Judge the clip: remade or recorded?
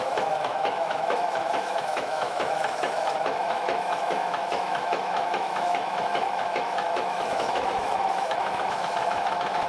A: remade